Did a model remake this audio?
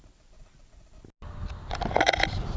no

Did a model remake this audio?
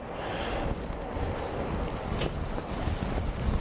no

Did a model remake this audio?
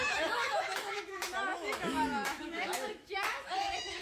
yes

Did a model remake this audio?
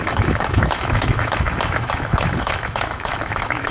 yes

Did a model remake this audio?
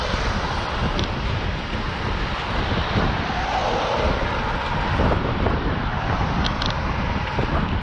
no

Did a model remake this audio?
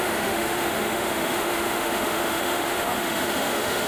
yes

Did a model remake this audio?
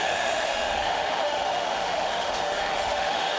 yes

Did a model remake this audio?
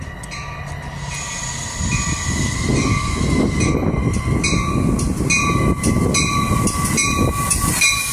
no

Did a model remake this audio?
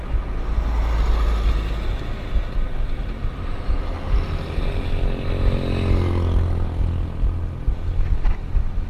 no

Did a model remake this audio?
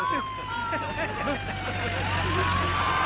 no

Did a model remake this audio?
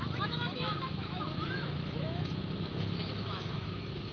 yes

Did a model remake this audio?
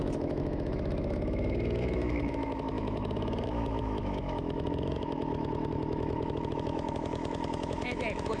yes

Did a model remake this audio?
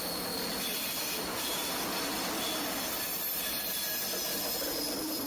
no